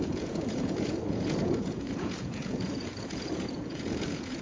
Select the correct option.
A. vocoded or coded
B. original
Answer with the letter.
A